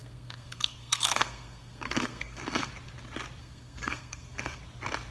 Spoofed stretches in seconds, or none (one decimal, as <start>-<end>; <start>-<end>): 0.0-2.7; 3.4-4.6